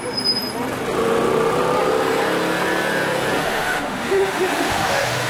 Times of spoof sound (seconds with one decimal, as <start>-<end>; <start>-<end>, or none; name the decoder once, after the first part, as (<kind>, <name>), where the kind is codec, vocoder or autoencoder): 3.4-5.3 (autoencoder, DAC-VAE)